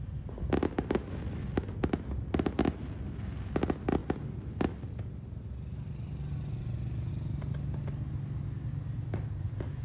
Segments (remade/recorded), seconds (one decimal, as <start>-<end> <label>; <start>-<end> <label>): 0.0-9.8 recorded

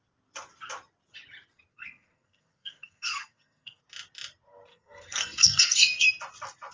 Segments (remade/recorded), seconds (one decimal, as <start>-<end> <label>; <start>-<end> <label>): 0.0-1.7 recorded; 1.7-3.8 remade; 3.8-4.7 recorded; 4.7-6.1 remade; 6.1-6.7 recorded

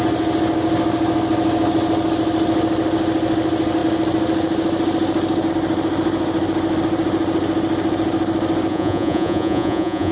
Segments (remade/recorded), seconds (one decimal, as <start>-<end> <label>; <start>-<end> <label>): 0.0-8.7 recorded; 8.7-10.1 remade